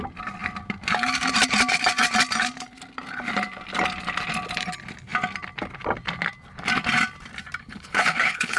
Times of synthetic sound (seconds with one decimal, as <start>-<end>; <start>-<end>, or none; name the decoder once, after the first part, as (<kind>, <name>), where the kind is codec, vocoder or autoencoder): 7.6-8.6 (codec, HILCodec)